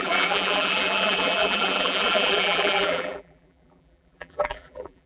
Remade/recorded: remade